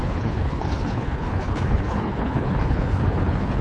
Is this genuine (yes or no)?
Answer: no